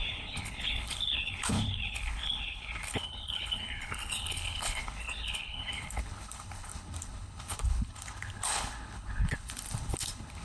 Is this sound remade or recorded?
remade